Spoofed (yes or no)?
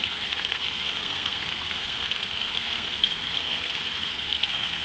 yes